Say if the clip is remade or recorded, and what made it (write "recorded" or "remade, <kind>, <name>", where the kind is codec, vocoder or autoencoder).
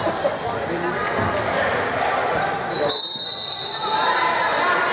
recorded